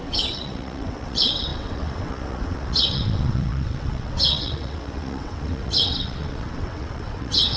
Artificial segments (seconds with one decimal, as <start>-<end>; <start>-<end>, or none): 0.0-7.6